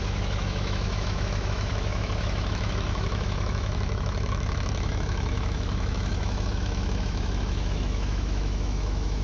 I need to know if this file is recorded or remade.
remade